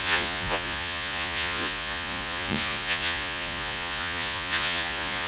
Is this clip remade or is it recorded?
remade